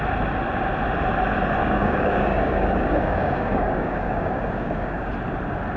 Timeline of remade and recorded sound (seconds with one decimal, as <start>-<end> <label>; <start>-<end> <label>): 0.0-1.6 recorded; 1.6-5.1 remade; 5.1-5.8 recorded